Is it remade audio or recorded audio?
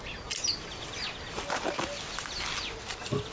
recorded